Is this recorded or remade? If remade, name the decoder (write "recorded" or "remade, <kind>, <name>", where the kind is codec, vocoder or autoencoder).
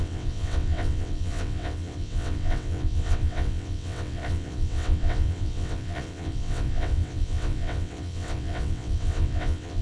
remade, vocoder, WaveNeXt